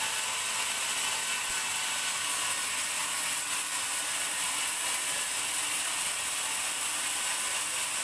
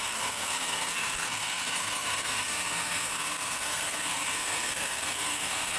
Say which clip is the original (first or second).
first